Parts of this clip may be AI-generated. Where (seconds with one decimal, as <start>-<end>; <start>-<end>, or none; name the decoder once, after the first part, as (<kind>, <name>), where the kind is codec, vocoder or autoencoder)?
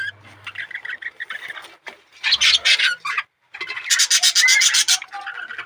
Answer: none